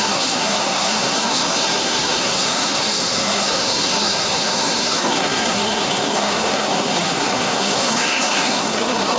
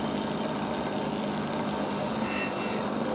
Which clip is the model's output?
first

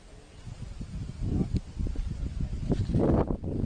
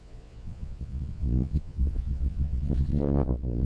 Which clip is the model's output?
second